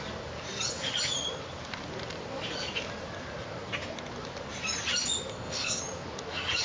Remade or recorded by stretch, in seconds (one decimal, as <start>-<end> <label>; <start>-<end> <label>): 0.0-5.3 recorded; 5.3-5.8 remade; 5.8-6.6 recorded